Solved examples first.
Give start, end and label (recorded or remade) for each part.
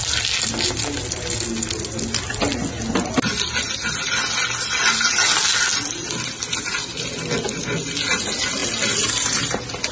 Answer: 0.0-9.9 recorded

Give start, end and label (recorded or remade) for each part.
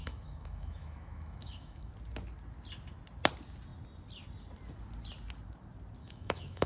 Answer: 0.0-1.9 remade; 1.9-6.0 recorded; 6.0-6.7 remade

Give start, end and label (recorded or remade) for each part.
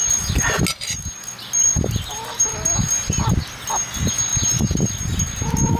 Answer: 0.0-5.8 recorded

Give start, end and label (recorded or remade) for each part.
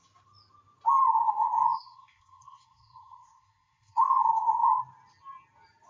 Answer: 0.0-1.2 recorded; 1.2-4.7 remade; 4.7-5.9 recorded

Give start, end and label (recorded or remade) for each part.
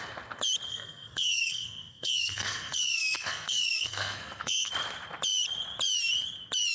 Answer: 0.0-0.7 recorded; 0.7-4.7 remade; 4.7-6.7 recorded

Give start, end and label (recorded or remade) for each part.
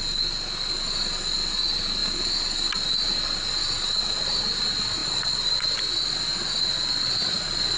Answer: 0.0-7.8 recorded